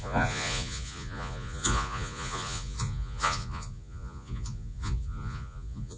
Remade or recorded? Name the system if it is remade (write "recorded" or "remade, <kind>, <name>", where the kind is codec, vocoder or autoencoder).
remade, vocoder, Vocos